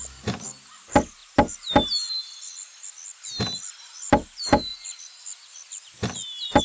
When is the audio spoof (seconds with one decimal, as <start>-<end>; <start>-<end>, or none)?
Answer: none